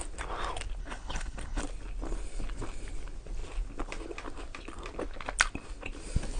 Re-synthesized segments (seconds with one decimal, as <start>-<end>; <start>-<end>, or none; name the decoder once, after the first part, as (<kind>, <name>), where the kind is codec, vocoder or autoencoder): 0.8-1.6 (codec, HILCodec)